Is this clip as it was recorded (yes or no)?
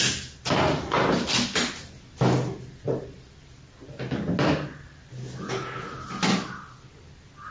yes